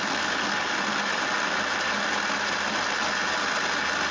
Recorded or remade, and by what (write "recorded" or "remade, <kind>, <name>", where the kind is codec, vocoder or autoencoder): recorded